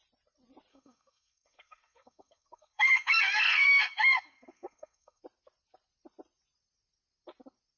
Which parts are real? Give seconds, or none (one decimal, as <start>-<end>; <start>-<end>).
0.0-0.7; 5.2-7.8